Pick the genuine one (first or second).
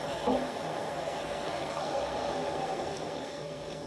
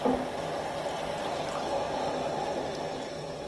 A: second